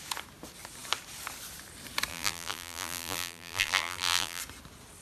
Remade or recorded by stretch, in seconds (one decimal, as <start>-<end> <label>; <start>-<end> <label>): 0.0-2.1 recorded; 2.1-4.4 remade; 4.4-5.0 recorded